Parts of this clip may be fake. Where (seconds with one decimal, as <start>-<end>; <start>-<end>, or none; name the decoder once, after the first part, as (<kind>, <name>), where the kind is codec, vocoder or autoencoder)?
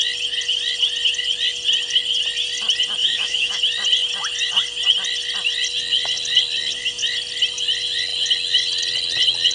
3.0-3.6 (autoencoder, DAC-VAE)